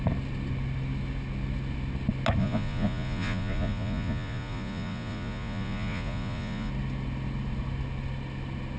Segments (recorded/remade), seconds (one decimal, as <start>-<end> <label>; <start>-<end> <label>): 0.0-2.4 recorded; 2.4-6.7 remade; 6.7-8.8 recorded